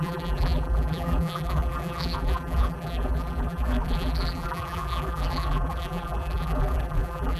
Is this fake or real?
fake